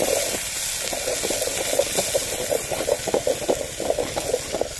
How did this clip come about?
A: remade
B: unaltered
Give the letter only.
B